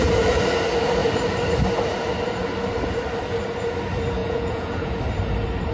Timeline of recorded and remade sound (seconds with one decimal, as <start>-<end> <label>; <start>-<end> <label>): 0.0-4.2 recorded; 4.2-5.0 remade; 5.0-5.7 recorded